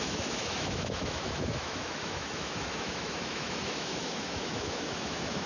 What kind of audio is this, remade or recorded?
remade